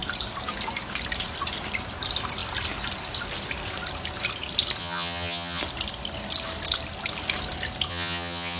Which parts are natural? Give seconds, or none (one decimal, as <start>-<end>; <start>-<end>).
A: 0.0-4.8; 5.6-7.9